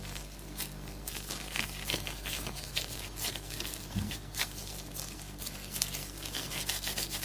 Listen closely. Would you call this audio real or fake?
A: fake